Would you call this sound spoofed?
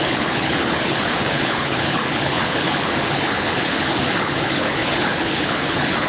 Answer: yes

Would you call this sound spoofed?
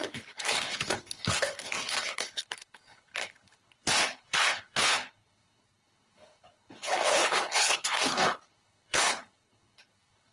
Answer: yes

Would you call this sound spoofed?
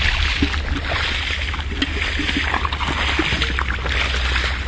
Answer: no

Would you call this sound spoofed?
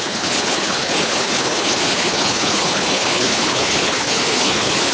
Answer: yes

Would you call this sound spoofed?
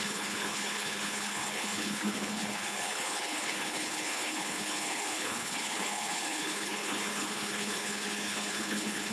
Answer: yes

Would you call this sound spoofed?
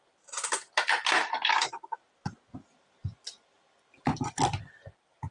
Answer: no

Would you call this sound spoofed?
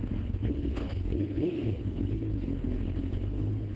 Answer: yes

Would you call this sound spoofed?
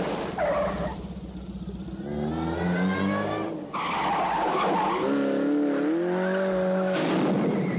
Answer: no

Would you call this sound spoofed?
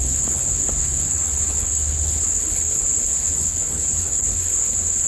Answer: yes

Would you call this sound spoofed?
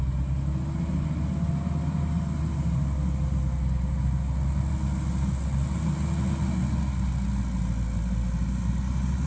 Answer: no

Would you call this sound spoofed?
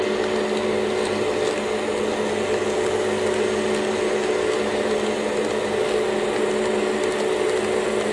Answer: no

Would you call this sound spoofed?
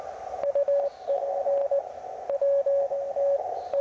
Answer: no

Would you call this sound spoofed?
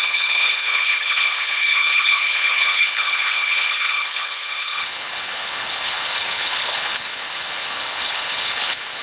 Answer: yes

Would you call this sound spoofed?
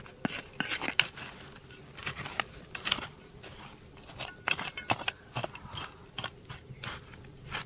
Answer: no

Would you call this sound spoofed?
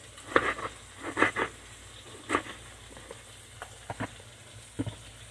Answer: no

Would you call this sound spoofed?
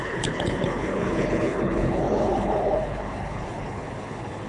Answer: yes